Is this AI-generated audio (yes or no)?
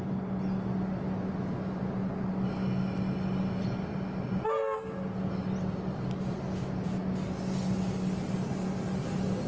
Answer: no